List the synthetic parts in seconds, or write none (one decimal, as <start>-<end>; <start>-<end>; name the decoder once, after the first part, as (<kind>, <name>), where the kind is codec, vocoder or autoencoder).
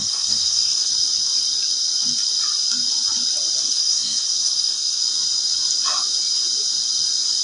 0.0-0.9 (codec, SNAC); 3.6-5.0